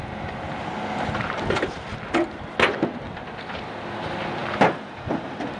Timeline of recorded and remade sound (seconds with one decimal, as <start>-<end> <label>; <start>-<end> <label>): 0.0-2.9 recorded; 2.9-3.7 remade; 3.7-5.6 recorded